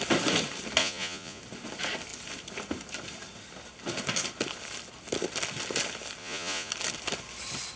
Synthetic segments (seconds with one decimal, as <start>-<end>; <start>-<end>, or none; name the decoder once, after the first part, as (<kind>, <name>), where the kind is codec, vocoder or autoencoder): 0.8-1.4 (vocoder, Vocos); 6.2-6.7